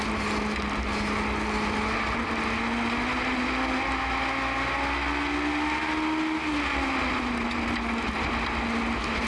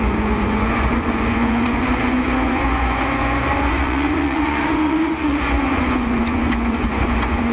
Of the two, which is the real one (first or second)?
first